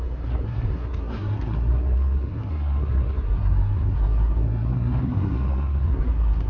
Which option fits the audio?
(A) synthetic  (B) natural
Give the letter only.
A